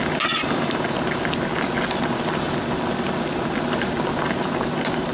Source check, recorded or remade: recorded